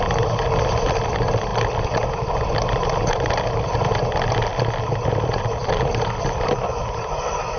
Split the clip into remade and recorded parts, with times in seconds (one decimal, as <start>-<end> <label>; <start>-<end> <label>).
0.0-7.6 recorded